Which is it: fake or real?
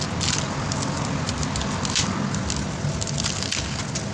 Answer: real